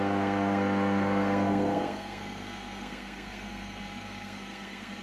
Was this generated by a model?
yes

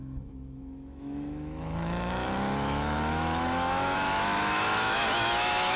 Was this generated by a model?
yes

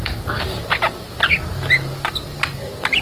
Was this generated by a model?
no